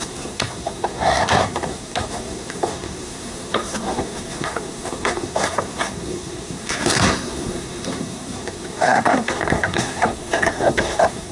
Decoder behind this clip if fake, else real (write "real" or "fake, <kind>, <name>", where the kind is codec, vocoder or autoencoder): fake, codec, SNAC